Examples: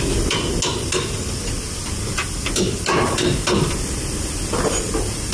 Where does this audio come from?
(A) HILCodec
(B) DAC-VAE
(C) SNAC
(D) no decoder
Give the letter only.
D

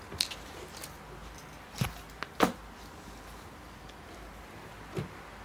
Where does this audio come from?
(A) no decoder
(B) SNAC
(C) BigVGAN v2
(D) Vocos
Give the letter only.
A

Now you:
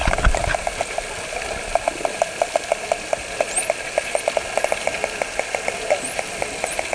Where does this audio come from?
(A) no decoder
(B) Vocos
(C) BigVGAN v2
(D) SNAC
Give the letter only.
A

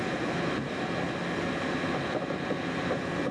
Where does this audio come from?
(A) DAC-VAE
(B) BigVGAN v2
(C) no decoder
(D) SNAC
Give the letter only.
C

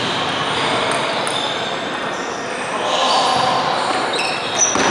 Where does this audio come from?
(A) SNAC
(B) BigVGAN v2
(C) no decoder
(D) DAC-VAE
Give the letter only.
C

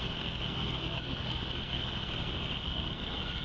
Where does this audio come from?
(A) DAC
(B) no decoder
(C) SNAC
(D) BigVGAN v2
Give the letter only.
C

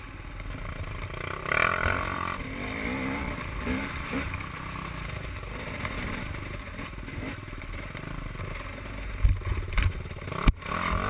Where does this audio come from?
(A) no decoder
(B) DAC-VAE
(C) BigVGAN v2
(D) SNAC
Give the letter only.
A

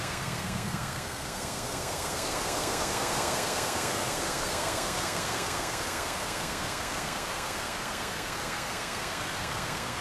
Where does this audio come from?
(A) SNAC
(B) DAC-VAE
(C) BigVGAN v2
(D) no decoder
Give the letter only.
A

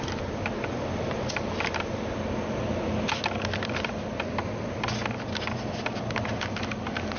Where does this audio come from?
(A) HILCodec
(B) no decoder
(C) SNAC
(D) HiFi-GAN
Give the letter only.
B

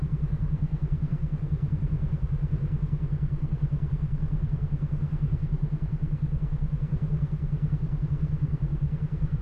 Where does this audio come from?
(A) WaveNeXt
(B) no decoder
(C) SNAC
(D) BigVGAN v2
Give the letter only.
C